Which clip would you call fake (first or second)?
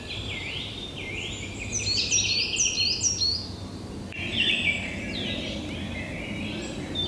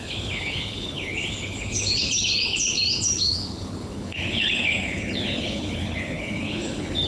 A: second